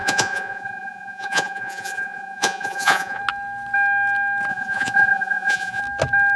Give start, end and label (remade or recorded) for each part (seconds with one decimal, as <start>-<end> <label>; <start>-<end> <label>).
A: 0.0-3.2 remade; 3.2-4.5 recorded; 4.5-5.8 remade; 5.8-6.4 recorded